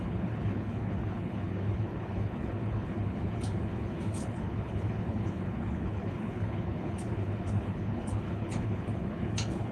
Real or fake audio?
fake